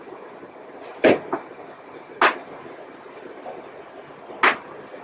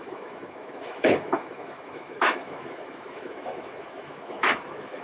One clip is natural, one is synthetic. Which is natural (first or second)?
first